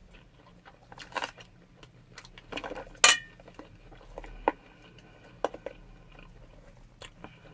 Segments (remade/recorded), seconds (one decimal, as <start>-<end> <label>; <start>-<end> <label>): 0.0-7.5 recorded

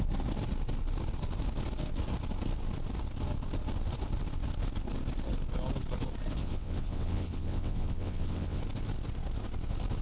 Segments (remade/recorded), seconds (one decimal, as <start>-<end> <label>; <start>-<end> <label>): 0.0-6.4 recorded; 6.4-8.6 remade; 8.6-10.0 recorded

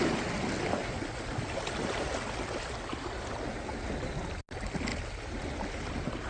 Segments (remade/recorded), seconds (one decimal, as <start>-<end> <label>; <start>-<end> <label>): 0.0-6.3 recorded

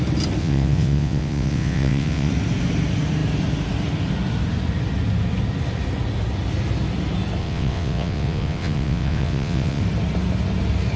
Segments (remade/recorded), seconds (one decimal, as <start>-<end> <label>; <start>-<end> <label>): 0.0-0.4 recorded; 0.4-2.3 remade; 2.3-7.4 recorded; 7.4-9.8 remade; 9.8-11.0 recorded

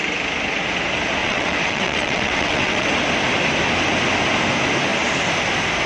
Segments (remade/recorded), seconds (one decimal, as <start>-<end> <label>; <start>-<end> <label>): 0.0-1.2 recorded; 1.2-2.9 remade; 2.9-5.9 recorded

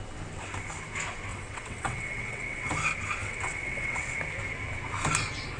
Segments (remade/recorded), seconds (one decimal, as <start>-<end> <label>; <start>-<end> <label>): 0.0-1.3 recorded; 1.3-2.7 remade; 2.7-3.2 recorded; 3.2-4.2 remade; 4.2-5.6 recorded

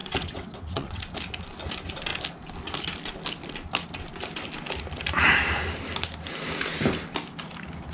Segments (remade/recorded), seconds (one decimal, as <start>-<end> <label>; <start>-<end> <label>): 0.0-1.0 remade; 1.0-7.9 recorded

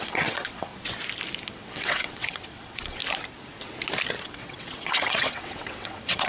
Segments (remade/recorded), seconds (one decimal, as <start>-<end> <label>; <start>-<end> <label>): 0.0-0.7 remade; 0.7-1.5 recorded; 1.5-3.0 remade; 3.0-4.2 recorded; 4.2-6.3 remade